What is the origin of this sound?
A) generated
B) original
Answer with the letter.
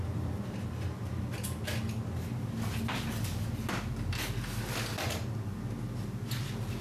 B